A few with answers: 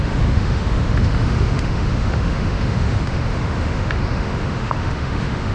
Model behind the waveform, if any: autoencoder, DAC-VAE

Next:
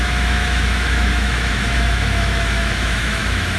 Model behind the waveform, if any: autoencoder, DAC-VAE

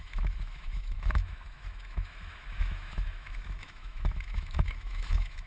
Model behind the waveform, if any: autoencoder, DAC-VAE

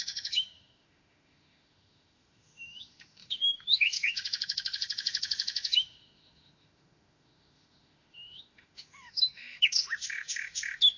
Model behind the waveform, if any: autoencoder, DAC-VAE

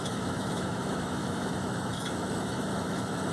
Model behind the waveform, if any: autoencoder, DAC-VAE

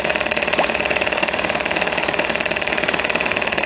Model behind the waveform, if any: autoencoder, DAC-VAE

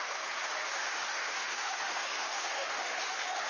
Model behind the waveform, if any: autoencoder, DAC-VAE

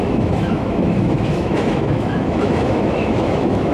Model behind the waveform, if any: autoencoder, DAC-VAE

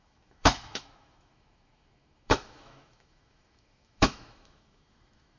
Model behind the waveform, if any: autoencoder, DAC-VAE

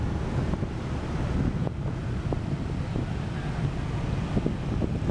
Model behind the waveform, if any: none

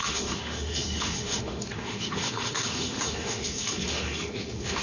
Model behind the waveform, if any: autoencoder, DAC-VAE